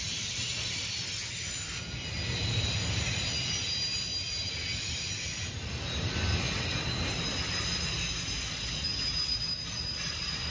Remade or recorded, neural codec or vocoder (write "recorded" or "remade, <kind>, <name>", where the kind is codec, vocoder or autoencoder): recorded